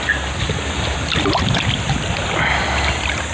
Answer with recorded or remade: recorded